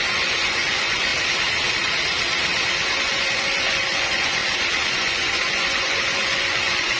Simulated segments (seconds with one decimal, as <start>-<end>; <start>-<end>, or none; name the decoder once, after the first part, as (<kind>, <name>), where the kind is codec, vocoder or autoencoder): 0.0-1.1 (vocoder, Vocos); 3.0-4.4; 4.9-7.0